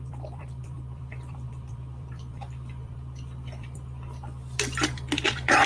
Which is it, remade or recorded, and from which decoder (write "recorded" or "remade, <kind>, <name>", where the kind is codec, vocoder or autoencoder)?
remade, vocoder, BigVGAN v2